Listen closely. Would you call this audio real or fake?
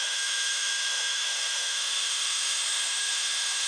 fake